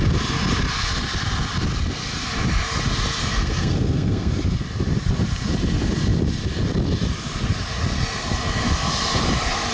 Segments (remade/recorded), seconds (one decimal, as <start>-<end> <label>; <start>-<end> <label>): 0.0-3.2 recorded; 3.2-4.3 remade; 4.3-9.7 recorded